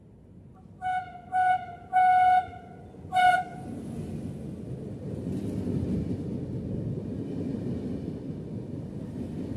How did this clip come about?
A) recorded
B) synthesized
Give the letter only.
A